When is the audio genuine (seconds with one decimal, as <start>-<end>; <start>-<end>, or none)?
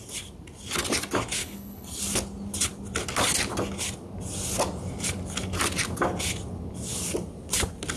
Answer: 0.0-1.4; 2.0-8.0